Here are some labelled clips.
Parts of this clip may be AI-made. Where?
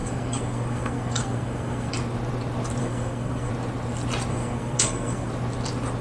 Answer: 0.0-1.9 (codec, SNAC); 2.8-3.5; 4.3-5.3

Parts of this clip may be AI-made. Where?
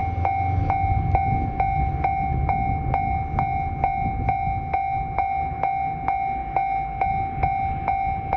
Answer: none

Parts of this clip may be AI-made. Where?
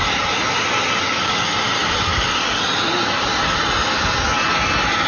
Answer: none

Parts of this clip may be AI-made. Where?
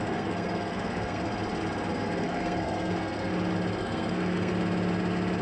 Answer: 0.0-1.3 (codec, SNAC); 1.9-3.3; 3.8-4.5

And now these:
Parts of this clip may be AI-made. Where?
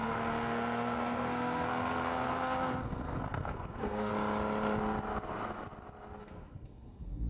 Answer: 0.0-4.1 (codec, SNAC); 6.2-7.3